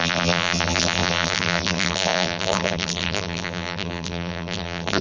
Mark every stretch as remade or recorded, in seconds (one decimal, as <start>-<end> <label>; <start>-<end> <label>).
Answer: 0.0-5.0 remade